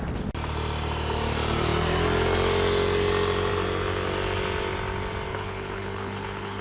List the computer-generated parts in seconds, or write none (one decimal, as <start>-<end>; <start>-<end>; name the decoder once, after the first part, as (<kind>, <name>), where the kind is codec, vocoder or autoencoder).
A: 5.3-6.6 (codec, HILCodec)